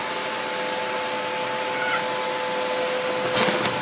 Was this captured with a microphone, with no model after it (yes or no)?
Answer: yes